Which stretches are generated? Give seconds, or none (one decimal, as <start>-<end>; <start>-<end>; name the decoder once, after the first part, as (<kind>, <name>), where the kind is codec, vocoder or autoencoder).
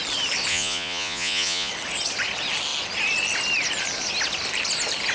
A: 0.5-1.7 (vocoder, Vocos)